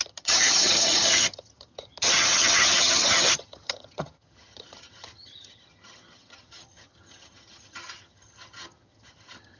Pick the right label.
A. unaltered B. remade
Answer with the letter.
B